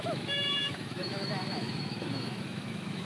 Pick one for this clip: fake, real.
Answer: fake